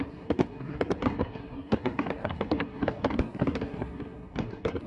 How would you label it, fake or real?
fake